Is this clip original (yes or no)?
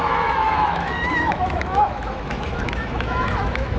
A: no